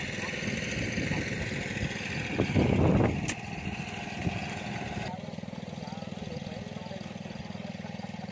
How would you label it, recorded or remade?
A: recorded